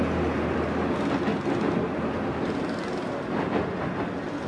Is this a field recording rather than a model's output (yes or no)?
yes